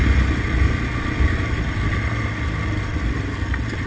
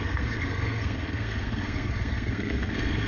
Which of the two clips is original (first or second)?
first